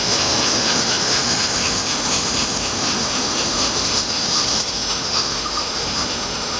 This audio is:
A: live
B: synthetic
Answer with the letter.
B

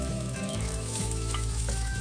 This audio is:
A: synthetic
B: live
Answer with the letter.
A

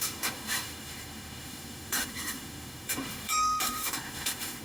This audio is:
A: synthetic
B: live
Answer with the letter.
A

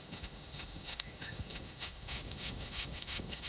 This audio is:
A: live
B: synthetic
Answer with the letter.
B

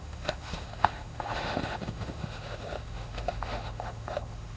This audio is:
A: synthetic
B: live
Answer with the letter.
A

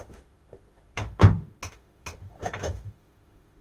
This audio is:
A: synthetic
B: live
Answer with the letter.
A